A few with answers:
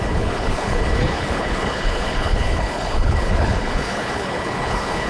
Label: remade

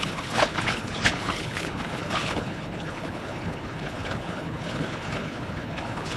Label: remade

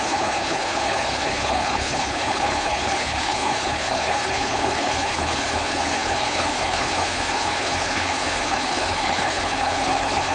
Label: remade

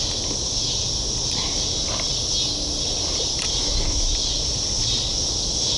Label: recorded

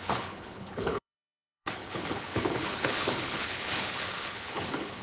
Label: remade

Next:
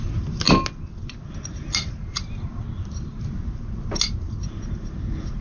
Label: recorded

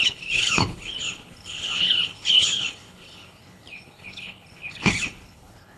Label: remade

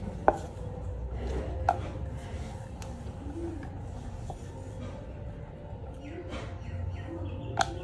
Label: recorded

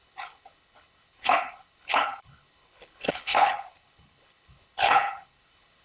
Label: remade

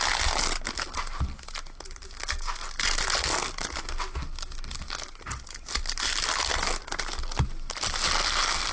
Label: recorded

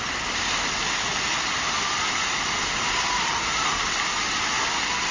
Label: recorded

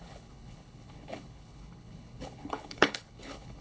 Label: remade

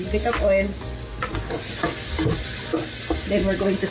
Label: recorded